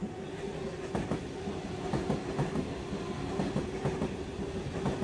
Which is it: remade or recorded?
recorded